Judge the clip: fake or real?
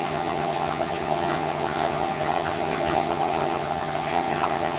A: fake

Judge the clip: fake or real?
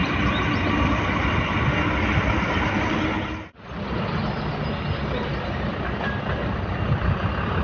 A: real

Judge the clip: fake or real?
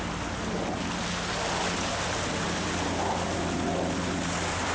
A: real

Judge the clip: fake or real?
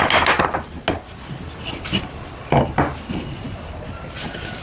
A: real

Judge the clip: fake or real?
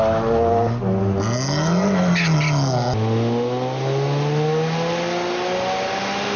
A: real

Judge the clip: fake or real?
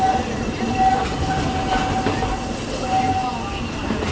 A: real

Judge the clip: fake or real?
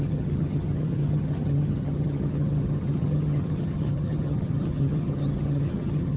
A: fake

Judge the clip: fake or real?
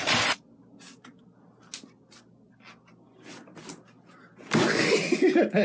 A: real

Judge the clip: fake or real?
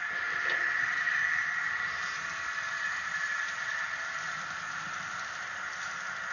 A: real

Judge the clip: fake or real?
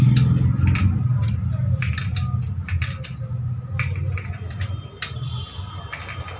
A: real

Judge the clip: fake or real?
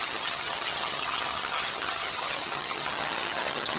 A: fake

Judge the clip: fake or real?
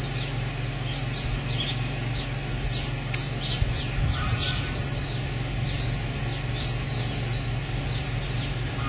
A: real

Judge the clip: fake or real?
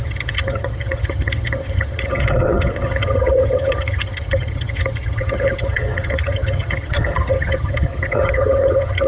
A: fake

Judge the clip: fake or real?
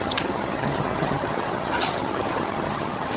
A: fake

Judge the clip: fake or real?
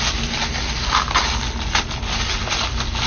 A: real